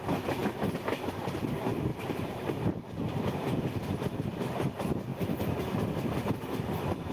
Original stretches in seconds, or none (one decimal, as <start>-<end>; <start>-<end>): 0.0-1.9; 3.7-7.1